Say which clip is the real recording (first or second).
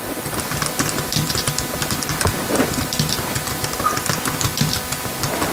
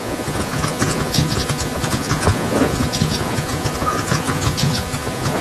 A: first